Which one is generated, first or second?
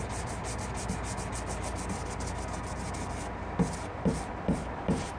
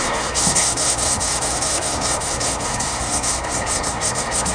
second